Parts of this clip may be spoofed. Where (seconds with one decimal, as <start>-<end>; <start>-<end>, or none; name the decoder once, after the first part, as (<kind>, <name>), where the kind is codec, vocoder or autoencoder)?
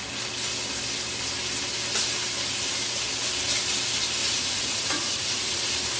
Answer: 4.2-5.6 (vocoder, Vocos)